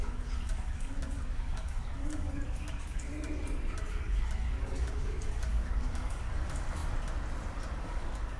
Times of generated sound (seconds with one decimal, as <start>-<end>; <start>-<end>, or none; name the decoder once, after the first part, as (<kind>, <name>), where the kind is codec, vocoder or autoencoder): 0.0-3.1 (codec, DAC); 3.9-6.8; 7.8-8.4